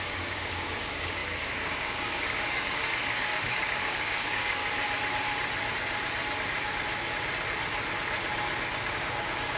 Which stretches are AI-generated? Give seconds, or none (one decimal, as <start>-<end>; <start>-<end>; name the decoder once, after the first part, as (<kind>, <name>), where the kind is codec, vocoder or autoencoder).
0.0-4.6 (codec, DAC); 8.9-9.6